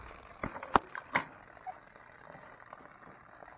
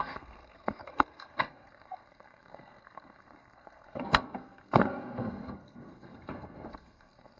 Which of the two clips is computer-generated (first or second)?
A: second